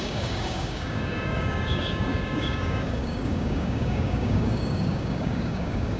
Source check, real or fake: fake